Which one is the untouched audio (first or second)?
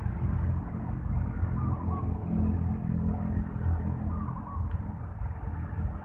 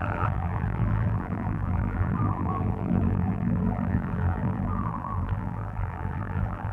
first